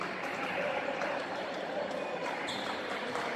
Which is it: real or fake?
fake